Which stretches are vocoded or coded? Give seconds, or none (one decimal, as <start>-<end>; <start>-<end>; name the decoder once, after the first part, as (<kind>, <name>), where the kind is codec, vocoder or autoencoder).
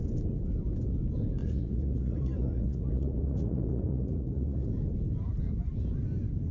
1.4-4.7 (vocoder, Vocos)